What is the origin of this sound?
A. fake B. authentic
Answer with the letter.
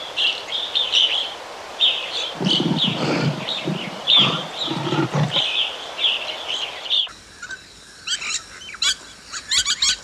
B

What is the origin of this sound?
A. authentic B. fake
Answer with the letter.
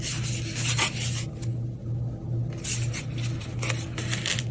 A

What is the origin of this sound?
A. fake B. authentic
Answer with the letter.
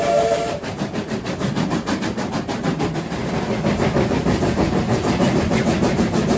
A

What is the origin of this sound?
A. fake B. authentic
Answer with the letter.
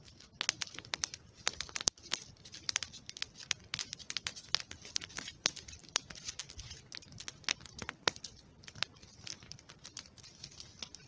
B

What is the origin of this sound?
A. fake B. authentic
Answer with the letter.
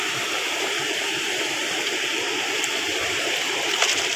A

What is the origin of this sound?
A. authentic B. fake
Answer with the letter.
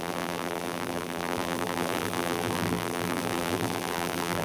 B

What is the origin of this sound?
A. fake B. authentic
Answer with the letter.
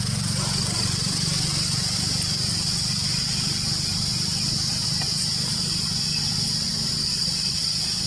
B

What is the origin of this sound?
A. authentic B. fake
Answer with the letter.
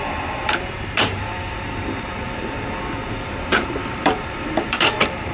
B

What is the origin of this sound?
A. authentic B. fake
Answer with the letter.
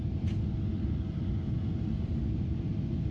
A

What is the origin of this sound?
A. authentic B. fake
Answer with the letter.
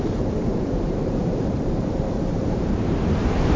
B